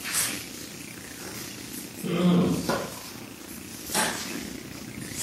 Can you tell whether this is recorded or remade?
recorded